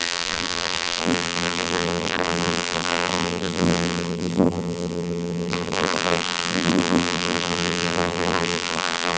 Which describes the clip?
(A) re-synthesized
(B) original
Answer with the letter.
A